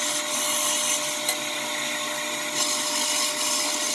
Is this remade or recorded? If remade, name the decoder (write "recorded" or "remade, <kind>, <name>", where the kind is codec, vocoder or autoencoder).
recorded